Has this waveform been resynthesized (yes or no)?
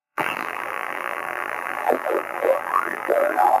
yes